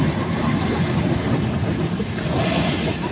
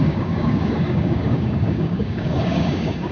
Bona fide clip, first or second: first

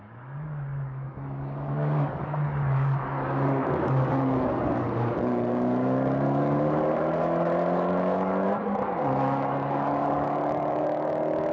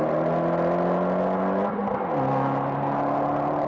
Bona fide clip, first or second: second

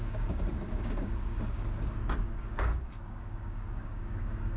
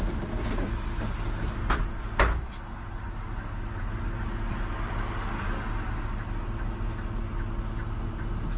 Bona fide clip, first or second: second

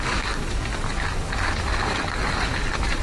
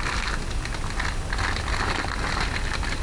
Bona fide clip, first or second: second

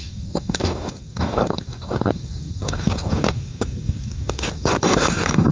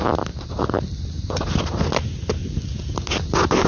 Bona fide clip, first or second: second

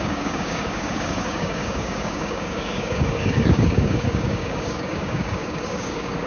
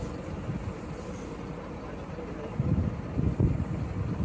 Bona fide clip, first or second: second